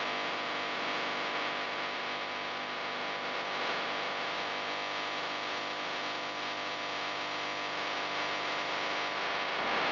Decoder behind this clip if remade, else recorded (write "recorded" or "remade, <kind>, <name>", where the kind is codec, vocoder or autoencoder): recorded